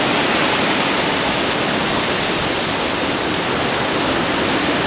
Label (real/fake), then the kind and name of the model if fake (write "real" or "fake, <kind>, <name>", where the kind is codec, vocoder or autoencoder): real